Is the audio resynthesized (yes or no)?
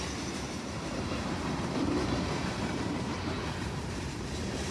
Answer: yes